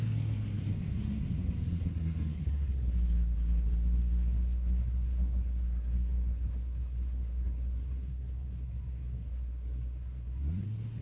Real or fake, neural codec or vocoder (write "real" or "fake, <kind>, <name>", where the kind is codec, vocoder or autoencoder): fake, codec, SNAC